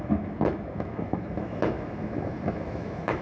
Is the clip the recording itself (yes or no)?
no